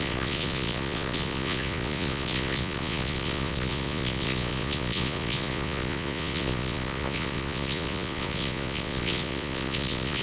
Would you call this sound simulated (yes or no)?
yes